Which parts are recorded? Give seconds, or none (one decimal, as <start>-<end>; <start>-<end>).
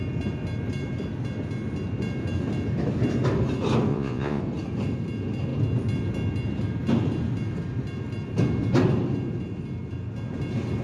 0.0-3.9; 4.4-10.8